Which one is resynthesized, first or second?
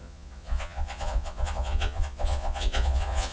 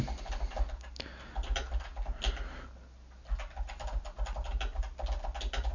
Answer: first